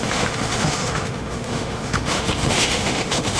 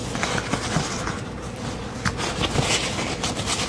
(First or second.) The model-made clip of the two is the first